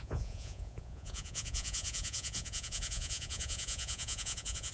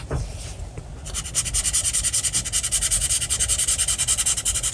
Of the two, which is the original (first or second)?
second